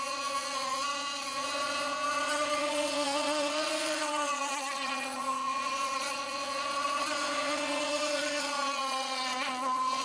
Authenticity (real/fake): fake